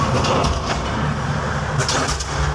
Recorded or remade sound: recorded